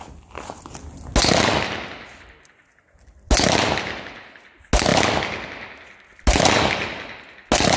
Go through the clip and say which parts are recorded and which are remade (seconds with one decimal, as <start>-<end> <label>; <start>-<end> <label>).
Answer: 0.0-7.8 recorded